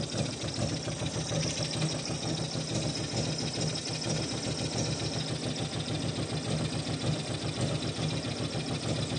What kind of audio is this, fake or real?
real